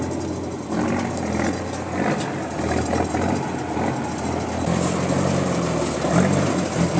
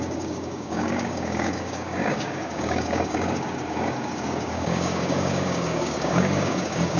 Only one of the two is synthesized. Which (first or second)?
second